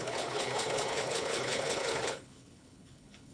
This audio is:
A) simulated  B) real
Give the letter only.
A